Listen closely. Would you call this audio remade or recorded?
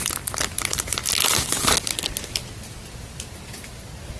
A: recorded